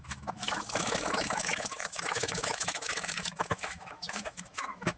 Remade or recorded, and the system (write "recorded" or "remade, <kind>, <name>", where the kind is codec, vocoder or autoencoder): remade, autoencoder, DAC-VAE